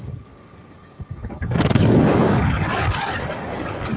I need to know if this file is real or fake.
fake